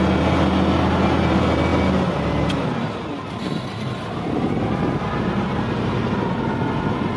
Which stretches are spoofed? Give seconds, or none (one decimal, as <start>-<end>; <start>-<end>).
none